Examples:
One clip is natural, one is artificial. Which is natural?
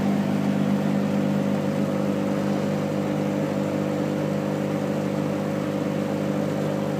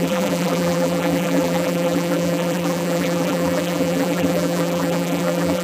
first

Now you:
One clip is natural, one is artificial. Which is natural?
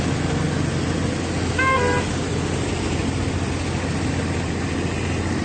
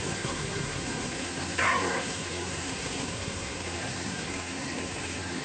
first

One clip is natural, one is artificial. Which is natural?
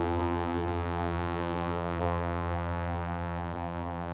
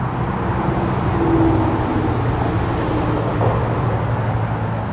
second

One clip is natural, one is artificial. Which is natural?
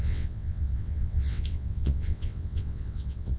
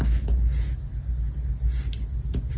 second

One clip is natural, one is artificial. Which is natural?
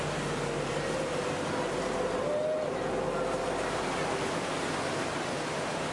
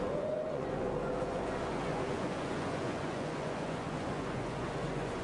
first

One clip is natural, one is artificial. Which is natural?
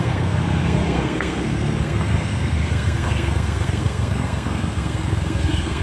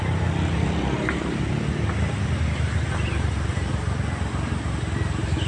second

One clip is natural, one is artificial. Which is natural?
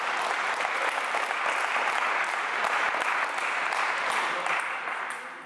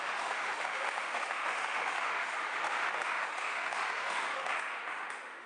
first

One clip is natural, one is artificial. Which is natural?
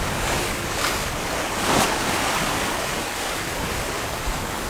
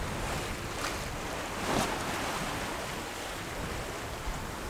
second